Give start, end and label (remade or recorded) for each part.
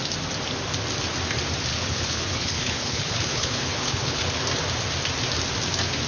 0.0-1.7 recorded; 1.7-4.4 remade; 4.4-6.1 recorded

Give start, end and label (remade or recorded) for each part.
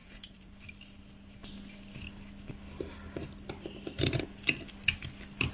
0.0-0.5 remade; 0.5-5.5 recorded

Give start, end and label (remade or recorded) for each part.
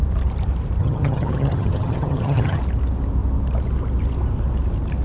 0.0-0.8 recorded; 0.8-2.6 remade; 2.6-5.0 recorded